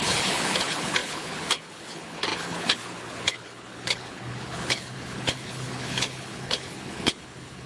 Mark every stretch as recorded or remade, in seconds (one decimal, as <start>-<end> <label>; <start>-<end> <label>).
0.0-7.7 remade